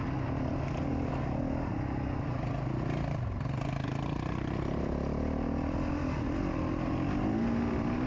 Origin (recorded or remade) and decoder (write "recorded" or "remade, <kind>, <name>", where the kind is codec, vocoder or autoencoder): recorded